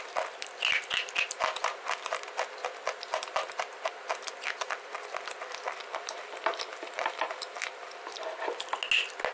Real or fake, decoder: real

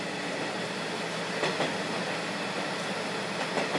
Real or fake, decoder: real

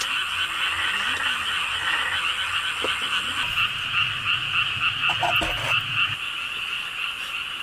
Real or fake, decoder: real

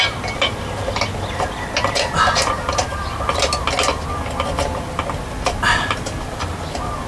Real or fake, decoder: real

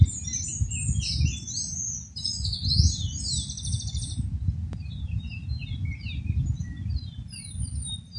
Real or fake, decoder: real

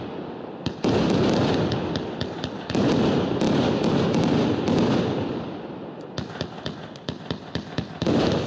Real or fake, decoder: real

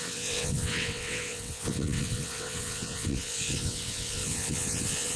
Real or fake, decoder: fake, vocoder, WaveNeXt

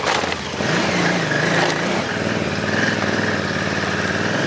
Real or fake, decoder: fake, vocoder, BigVGAN v2